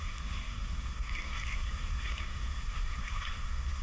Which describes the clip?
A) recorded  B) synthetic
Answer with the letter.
B